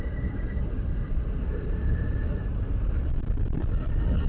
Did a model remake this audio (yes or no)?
no